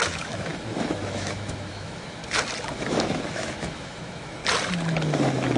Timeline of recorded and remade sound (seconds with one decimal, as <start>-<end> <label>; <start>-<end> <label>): 0.0-2.2 remade; 2.2-2.7 recorded; 2.7-4.4 remade; 4.4-5.6 recorded